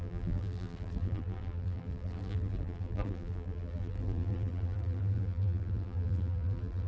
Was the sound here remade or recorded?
remade